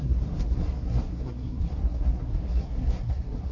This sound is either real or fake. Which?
fake